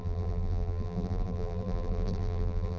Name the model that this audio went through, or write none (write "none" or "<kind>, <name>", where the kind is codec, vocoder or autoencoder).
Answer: vocoder, BigVGAN v2